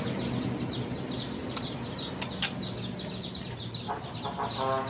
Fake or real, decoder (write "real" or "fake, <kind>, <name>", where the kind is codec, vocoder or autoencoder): real